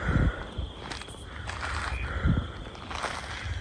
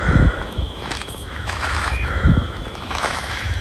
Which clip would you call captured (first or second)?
first